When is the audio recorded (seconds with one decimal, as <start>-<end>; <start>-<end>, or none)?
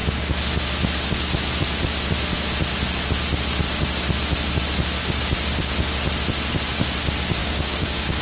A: 0.0-5.0; 5.7-7.4